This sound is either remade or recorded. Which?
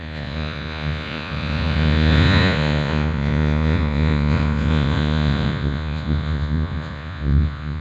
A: remade